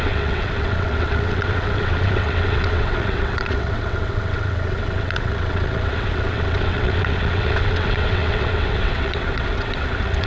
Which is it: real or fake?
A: fake